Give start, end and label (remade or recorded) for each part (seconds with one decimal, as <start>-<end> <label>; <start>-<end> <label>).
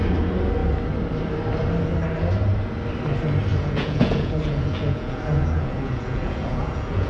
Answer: 0.0-3.5 recorded; 3.5-7.1 remade